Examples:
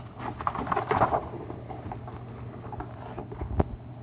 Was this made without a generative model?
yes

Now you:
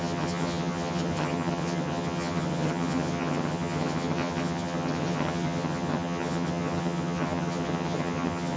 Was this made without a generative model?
no